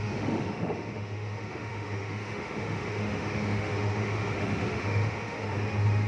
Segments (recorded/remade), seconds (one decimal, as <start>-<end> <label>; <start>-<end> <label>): 0.0-6.1 remade